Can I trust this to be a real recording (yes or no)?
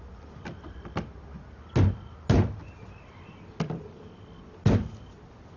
yes